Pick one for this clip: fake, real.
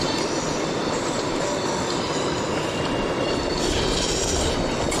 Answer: real